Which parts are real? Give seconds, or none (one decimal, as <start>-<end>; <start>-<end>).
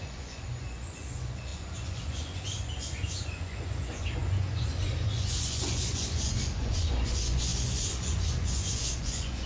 none